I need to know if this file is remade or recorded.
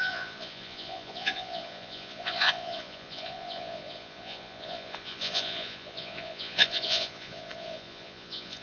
remade